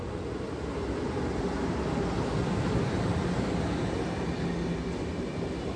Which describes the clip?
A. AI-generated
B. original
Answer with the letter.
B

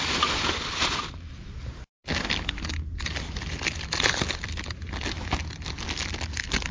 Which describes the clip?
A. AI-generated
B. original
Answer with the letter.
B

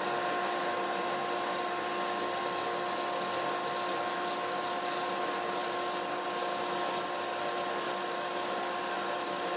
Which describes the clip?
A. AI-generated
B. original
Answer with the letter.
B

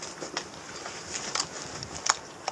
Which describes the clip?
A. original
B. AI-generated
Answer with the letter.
A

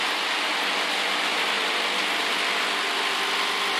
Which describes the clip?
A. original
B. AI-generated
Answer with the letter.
A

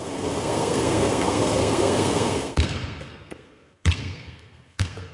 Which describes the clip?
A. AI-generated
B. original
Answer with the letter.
A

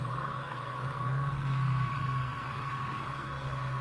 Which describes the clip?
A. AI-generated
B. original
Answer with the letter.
A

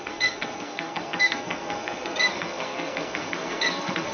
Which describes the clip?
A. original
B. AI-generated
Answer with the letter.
B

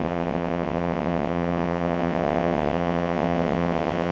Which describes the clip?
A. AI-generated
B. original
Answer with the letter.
A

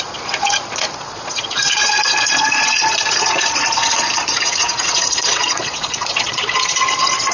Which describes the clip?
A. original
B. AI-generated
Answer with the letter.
B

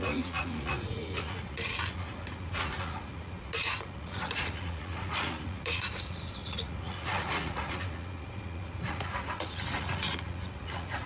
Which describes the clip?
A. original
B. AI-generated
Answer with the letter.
B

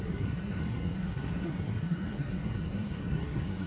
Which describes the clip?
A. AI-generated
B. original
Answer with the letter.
A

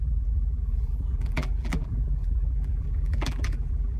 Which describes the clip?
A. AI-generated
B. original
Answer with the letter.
A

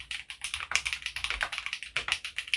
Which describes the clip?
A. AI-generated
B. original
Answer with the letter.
B